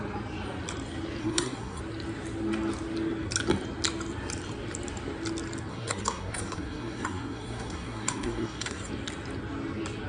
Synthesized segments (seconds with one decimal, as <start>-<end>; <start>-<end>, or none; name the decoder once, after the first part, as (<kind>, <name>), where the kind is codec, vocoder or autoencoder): 1.2-1.8 (codec, SNAC); 5.7-8.9